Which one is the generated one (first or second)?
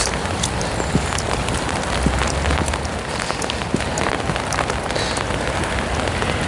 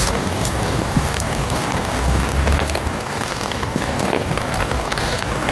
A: second